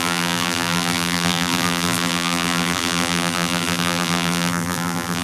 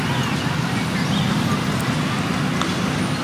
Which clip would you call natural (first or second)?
second